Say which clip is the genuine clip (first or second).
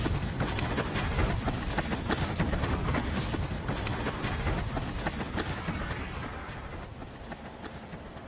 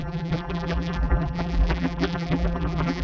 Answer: first